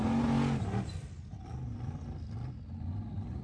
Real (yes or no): yes